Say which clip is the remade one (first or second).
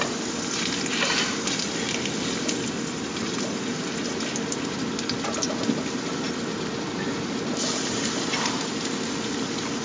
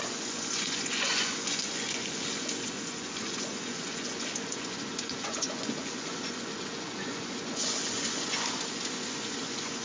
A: second